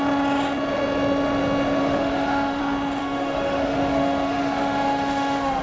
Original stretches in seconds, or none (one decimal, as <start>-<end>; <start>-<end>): 0.0-1.8; 2.6-3.0